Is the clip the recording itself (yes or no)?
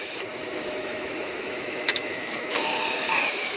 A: no